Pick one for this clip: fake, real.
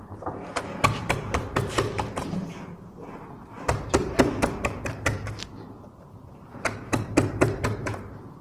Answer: fake